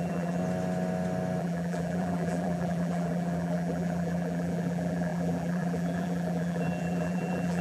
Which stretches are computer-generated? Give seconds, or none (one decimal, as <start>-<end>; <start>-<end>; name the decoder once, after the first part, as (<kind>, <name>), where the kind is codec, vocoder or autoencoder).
0.0-0.4 (vocoder, BigVGAN v2); 1.4-7.6